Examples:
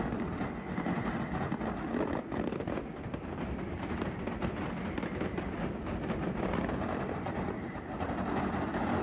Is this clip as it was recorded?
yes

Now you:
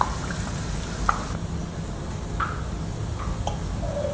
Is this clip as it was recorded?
yes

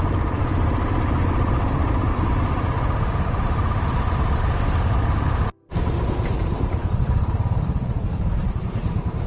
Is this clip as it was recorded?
no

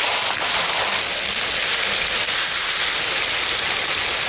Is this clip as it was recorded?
yes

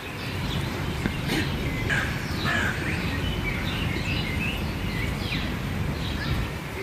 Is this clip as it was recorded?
yes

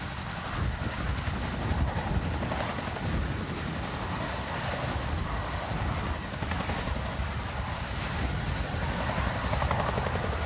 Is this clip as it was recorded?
yes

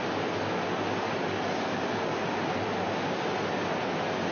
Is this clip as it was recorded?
yes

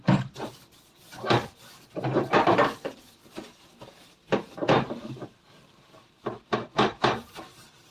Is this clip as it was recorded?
no